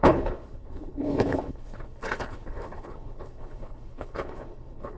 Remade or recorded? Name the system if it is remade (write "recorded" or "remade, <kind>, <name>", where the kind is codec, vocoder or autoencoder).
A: remade, codec, HILCodec